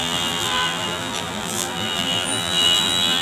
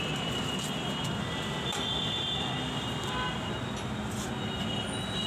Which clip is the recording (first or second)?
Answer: second